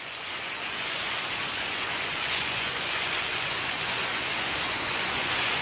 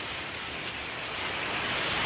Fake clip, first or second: first